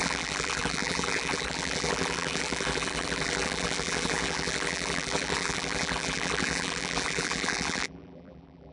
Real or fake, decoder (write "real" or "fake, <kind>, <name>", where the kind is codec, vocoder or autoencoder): fake, vocoder, BigVGAN v2